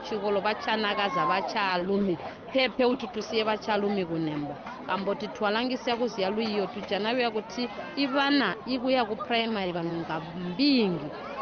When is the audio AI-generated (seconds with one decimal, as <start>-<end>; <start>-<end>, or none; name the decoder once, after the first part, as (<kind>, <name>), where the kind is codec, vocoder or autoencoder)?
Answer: 1.7-3.3 (codec, HILCodec); 9.4-9.9